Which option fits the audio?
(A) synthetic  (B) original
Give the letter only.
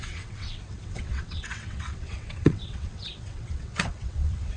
A